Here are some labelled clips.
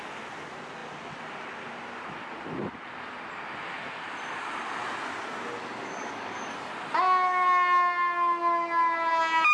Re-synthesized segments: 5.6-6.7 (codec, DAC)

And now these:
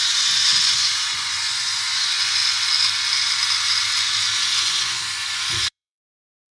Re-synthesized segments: 0.0-2.4 (vocoder, Vocos); 4.6-6.5

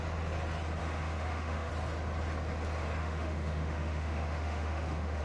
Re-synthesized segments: 0.8-1.7 (autoencoder, DAC-VAE); 3.0-5.2

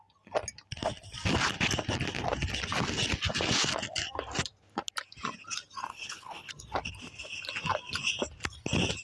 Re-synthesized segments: 5.9-6.5 (codec, HILCodec)

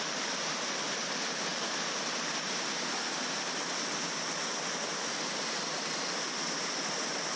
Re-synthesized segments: none

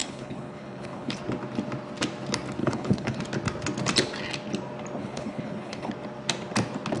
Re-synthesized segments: 0.0-1.2 (codec, HILCodec); 2.6-3.2; 5.0-5.9

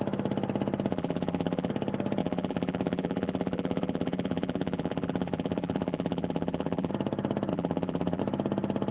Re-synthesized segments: 0.9-1.7 (vocoder, BigVGAN v2); 2.2-6.9; 7.5-8.2